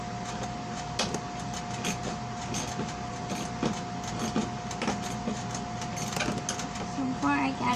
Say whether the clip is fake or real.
real